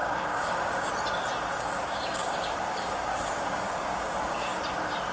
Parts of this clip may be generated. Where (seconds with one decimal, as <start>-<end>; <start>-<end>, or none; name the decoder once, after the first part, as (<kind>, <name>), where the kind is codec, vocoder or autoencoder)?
0.0-0.9 (codec, DAC); 1.5-4.6